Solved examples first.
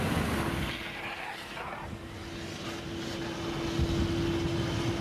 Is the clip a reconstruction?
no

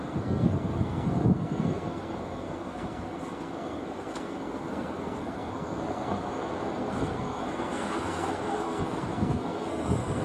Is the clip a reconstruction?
yes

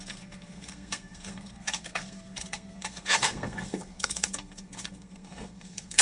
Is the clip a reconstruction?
yes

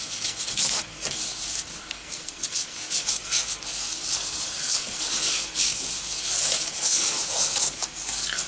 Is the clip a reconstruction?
yes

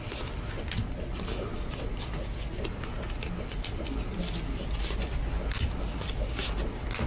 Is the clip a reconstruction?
no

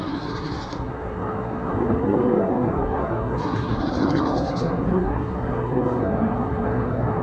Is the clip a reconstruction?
yes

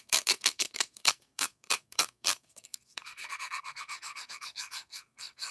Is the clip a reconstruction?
yes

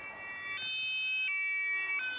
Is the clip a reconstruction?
no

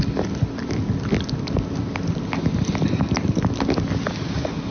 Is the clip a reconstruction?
no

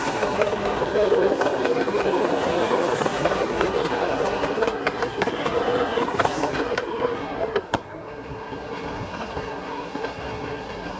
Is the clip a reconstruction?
yes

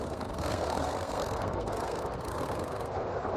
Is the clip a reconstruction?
yes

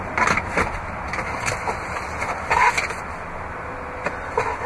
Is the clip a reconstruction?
no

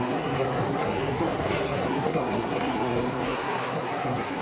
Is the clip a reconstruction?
yes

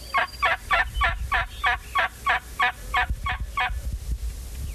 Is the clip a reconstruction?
no